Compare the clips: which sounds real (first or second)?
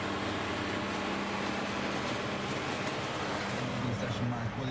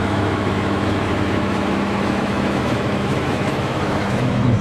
first